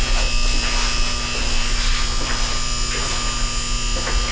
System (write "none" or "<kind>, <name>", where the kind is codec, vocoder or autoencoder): none